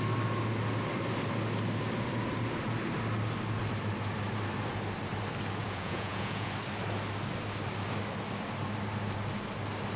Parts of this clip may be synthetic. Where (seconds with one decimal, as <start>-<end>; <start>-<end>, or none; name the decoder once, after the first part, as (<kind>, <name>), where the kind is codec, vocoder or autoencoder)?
5.6-6.5 (vocoder, Vocos)